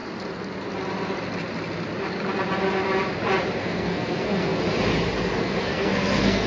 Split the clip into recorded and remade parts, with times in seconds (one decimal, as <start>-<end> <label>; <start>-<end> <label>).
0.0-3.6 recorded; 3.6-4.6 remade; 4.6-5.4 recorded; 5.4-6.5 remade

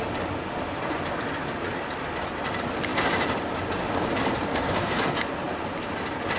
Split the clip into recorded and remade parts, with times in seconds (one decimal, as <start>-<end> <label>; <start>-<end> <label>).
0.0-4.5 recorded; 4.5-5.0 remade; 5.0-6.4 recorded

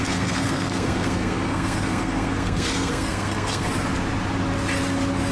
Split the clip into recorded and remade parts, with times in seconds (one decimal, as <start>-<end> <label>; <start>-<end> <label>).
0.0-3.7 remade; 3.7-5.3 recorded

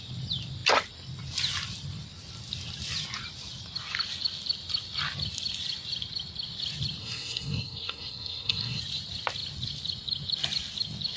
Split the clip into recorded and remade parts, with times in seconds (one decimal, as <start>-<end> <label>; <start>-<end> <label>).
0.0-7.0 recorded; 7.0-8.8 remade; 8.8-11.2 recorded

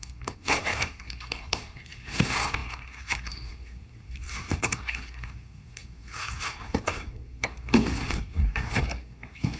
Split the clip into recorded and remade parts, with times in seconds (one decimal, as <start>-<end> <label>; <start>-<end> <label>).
0.0-9.6 remade